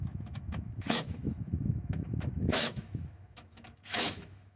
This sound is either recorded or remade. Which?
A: remade